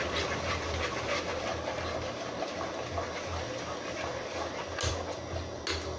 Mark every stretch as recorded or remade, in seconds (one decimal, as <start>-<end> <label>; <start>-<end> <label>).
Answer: 0.0-6.0 recorded